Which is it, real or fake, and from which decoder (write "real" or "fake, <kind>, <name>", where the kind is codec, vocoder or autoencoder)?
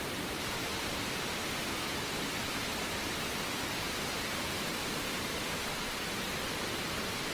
real